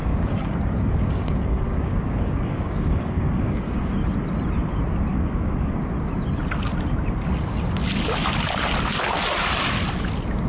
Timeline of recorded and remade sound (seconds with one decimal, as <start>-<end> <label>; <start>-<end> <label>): 0.0-3.8 remade; 3.8-5.1 recorded; 5.1-5.7 remade; 5.7-10.5 recorded